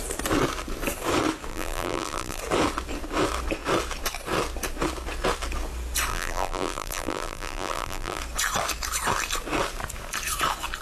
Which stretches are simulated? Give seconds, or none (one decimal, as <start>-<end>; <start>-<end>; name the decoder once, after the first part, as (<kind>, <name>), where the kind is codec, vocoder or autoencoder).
1.5-2.4 (vocoder, BigVGAN v2); 6.1-8.2